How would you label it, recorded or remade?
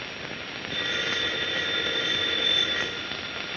recorded